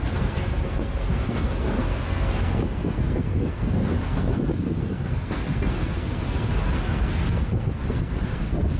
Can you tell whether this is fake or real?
fake